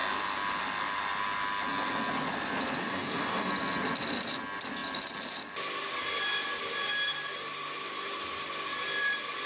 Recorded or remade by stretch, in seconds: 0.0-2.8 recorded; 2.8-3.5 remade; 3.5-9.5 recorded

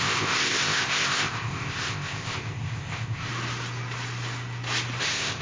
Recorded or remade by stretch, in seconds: 0.0-3.3 remade; 3.3-5.0 recorded; 5.0-5.4 remade

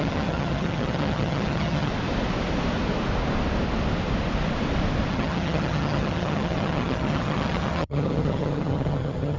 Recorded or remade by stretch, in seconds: 0.0-1.9 remade; 1.9-5.1 recorded; 5.1-9.4 remade

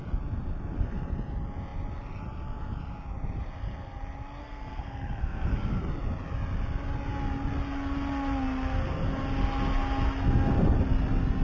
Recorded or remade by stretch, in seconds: 0.0-4.4 recorded; 4.4-5.8 remade; 5.8-11.4 recorded

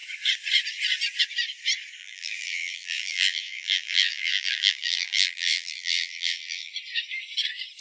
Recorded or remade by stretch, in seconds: 0.0-2.0 recorded; 2.0-6.7 remade; 6.7-7.8 recorded

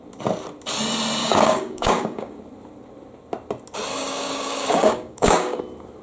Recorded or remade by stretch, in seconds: 0.0-1.2 recorded; 1.2-2.4 remade; 2.4-3.9 recorded; 3.9-5.6 remade; 5.6-6.0 recorded

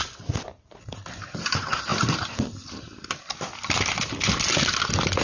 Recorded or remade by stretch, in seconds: 0.0-5.2 recorded